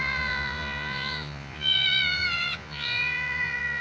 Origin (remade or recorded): remade